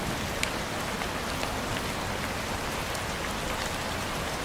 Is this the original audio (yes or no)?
yes